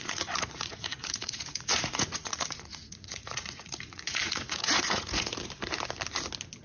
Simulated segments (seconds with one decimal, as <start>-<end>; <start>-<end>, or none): 0.0-5.3